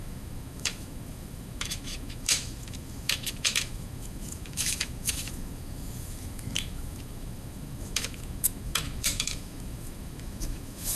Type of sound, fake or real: fake